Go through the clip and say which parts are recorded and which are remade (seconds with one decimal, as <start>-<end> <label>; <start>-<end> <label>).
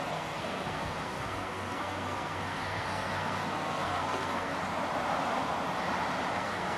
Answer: 0.0-4.5 remade; 4.5-6.3 recorded; 6.3-6.8 remade